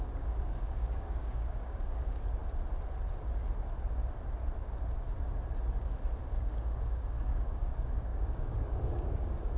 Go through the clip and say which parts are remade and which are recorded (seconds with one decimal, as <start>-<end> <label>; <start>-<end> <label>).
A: 0.0-2.4 remade; 2.4-6.3 recorded; 6.3-9.6 remade